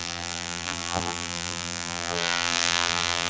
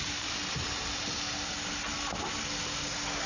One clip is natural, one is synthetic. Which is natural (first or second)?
second